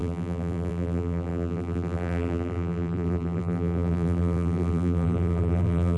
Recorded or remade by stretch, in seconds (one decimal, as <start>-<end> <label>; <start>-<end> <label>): 0.0-6.0 remade